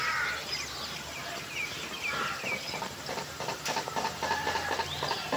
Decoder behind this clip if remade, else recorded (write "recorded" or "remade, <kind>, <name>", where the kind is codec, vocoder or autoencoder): remade, vocoder, BigVGAN v2